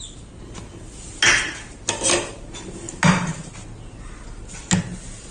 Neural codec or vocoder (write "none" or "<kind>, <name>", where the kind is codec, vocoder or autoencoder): none